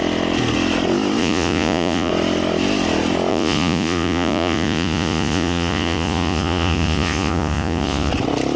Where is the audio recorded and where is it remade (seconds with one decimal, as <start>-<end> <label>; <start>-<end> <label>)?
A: 0.0-1.2 recorded; 1.2-2.1 remade; 2.1-3.3 recorded; 3.3-8.1 remade; 8.1-8.6 recorded